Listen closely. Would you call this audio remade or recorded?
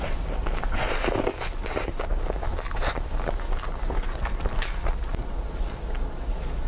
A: recorded